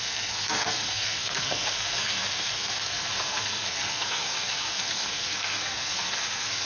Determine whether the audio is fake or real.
fake